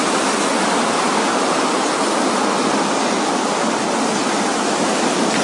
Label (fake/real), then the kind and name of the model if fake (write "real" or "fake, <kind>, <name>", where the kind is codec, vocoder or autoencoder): real